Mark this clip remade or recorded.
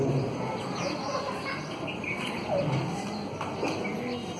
recorded